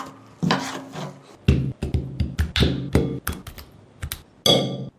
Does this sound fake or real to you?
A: real